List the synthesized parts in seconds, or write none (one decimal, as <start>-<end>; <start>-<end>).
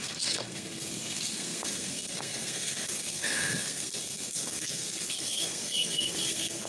0.0-6.7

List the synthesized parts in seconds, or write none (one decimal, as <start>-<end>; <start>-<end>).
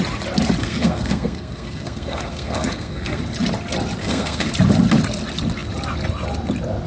0.6-3.2; 4.0-4.5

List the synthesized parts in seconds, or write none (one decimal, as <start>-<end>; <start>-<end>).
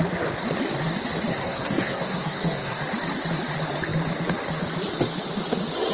1.3-2.8